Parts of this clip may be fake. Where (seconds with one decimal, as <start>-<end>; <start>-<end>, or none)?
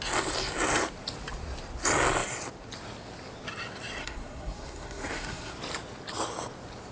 4.0-5.5